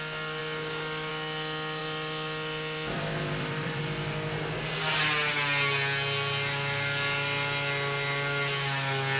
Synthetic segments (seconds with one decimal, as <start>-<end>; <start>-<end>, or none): 0.4-1.1; 1.8-3.8